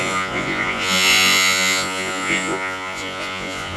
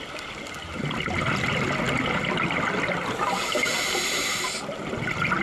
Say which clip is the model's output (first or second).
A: first